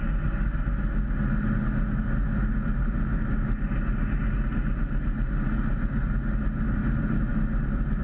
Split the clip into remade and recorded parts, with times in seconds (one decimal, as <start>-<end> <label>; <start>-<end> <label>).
0.0-8.0 recorded